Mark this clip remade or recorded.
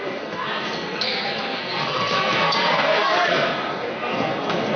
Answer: remade